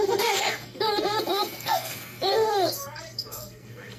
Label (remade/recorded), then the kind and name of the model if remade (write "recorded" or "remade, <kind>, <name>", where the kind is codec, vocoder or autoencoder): remade, codec, SNAC